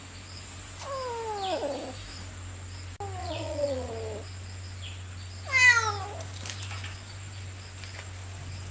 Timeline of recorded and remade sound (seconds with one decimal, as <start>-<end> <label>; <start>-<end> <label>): 0.0-3.2 recorded; 3.2-3.9 remade; 3.9-8.7 recorded